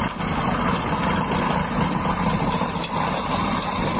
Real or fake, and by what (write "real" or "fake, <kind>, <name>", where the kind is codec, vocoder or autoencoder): real